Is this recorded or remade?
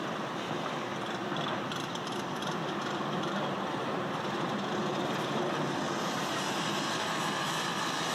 remade